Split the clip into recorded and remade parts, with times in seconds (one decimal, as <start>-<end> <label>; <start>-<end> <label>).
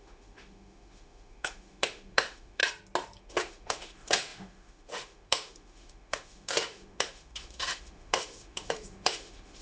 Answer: 0.0-2.6 remade; 2.6-3.2 recorded; 3.2-9.6 remade